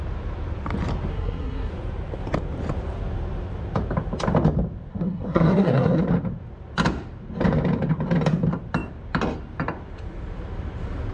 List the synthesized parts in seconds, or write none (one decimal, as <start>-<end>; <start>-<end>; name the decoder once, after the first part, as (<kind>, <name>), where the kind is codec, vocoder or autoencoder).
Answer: 1.1-1.7 (codec, SNAC); 4.9-6.0